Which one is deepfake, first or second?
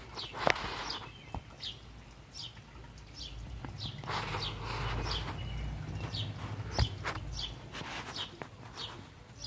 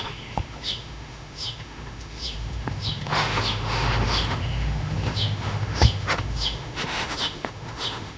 second